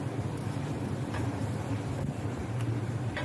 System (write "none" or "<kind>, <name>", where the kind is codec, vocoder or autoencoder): vocoder, BigVGAN v2